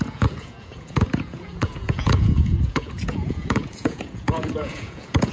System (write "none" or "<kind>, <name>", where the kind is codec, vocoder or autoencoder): vocoder, Vocos